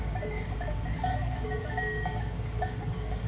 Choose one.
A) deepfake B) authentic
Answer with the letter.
A